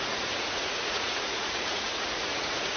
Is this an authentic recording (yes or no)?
no